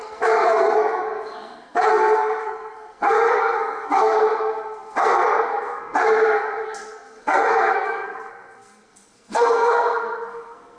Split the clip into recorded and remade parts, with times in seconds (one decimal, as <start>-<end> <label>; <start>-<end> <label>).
0.0-10.8 remade